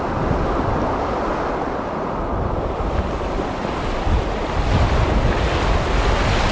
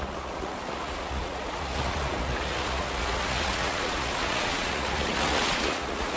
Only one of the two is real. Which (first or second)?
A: first